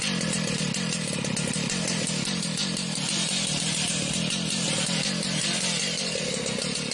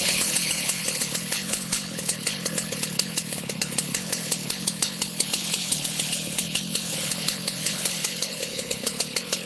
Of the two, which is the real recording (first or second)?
first